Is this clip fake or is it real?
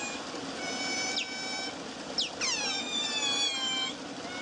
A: real